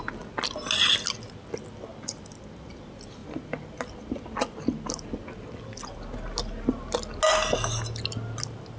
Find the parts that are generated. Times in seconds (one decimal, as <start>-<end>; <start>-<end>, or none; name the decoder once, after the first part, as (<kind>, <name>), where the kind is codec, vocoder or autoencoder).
1.9-2.8 (vocoder, BigVGAN v2)